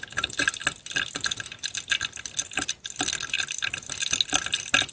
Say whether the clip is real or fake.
real